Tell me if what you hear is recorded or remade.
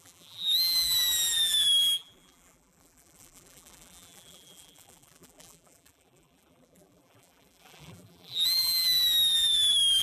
remade